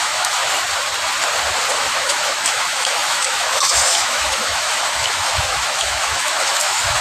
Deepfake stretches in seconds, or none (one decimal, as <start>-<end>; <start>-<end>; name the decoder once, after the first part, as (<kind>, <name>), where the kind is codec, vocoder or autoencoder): 0.0-0.4 (autoencoder, DAC-VAE); 1.7-7.0